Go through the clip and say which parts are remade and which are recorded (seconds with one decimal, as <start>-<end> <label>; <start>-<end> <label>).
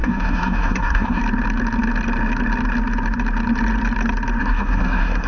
0.0-1.2 remade; 1.2-4.4 recorded; 4.4-5.3 remade